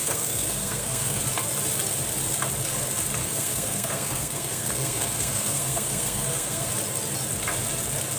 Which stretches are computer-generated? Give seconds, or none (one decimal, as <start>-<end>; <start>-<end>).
0.0-1.2; 3.2-6.7